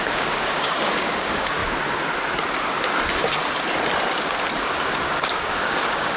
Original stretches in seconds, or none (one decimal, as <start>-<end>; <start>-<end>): 1.6-4.6